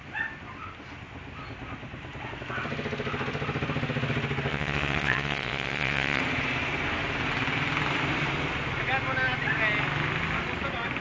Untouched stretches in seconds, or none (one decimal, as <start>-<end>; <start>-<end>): 0.0-4.5; 6.2-11.0